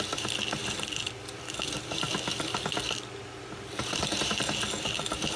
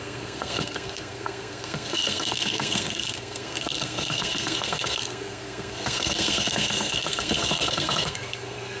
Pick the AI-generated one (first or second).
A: second